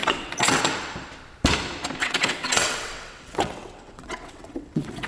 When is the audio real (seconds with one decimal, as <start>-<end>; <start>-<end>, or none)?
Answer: 0.6-2.0